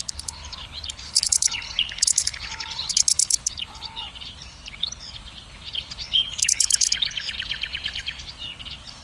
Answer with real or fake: fake